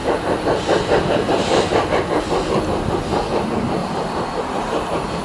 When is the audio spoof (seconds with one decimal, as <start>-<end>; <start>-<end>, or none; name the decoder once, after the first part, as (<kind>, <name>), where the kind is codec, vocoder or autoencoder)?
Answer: 0.0-2.2 (vocoder, BigVGAN v2); 3.8-4.6